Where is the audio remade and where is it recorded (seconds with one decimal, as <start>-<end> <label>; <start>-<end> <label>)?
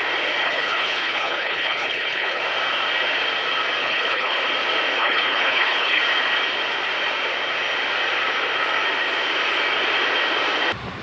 0.0-0.4 recorded; 0.4-2.4 remade; 2.4-3.8 recorded; 3.8-4.4 remade; 4.4-5.0 recorded; 5.0-6.0 remade; 6.0-11.0 recorded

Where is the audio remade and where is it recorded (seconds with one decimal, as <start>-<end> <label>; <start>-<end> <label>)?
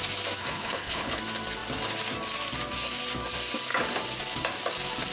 0.0-0.4 recorded; 0.4-1.2 remade; 1.2-5.1 recorded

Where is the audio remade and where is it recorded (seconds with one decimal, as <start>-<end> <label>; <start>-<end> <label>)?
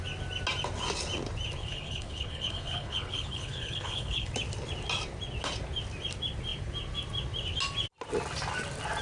0.0-1.6 recorded; 1.6-4.3 remade; 4.3-9.0 recorded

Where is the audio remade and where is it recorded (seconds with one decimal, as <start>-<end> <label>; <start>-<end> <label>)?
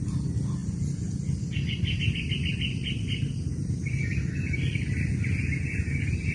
0.0-6.3 recorded